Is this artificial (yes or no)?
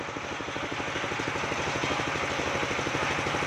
no